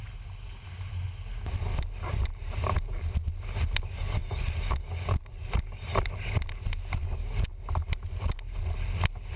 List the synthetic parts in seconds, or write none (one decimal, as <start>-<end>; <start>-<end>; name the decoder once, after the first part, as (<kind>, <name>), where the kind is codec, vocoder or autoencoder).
none

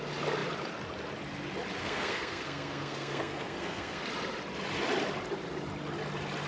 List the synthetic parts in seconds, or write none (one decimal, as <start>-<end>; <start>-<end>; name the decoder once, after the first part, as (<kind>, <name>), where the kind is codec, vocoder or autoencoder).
1.8-4.0 (codec, SNAC)

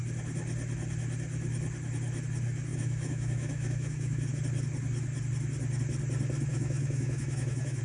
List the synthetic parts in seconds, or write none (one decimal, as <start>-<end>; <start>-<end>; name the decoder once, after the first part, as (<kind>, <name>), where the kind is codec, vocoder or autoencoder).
2.7-4.3 (autoencoder, DAC-VAE); 6.5-7.8

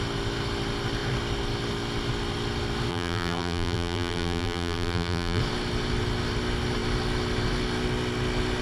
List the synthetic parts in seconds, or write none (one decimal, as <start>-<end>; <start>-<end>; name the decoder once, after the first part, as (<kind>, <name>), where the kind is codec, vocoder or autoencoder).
2.9-5.4 (vocoder, BigVGAN v2)

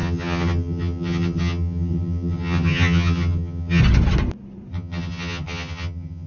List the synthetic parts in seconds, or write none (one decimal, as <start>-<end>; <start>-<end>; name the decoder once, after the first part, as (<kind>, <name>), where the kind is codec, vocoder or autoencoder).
0.0-3.8 (vocoder, HiFi-GAN); 4.7-6.3

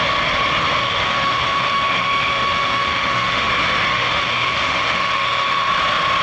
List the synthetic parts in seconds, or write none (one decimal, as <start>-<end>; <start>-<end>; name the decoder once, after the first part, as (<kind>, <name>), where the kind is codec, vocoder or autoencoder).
0.8-3.5 (autoencoder, DAC-VAE); 3.9-5.7